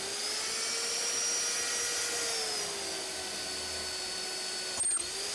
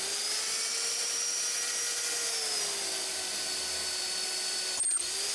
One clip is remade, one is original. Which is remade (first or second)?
second